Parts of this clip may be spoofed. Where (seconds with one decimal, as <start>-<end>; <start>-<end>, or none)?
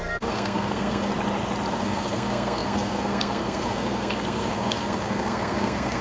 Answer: 0.0-1.1; 1.7-6.0